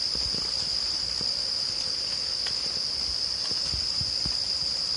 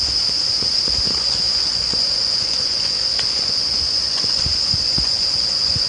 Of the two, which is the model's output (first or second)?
second